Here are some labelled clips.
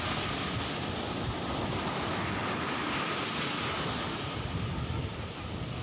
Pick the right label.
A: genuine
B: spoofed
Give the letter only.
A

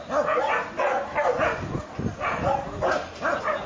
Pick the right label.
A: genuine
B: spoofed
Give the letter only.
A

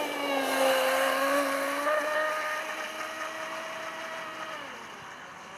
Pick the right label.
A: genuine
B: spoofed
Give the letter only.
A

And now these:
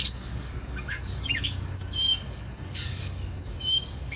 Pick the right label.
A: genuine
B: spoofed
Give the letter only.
B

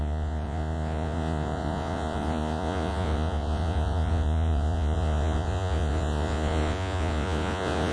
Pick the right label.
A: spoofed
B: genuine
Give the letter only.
A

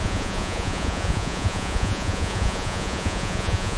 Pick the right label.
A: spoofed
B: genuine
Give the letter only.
A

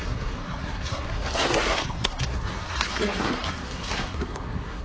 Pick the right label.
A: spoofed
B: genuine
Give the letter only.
A